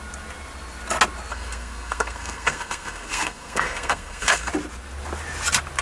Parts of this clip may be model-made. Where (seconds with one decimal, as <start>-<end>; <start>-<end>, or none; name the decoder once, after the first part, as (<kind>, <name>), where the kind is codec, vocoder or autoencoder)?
1.3-4.5 (codec, SNAC)